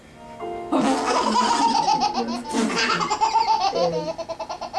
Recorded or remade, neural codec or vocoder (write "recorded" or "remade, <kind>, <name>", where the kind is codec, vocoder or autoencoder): recorded